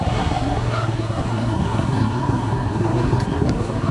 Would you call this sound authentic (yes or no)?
no